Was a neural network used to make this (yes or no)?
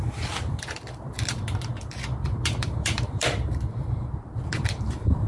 yes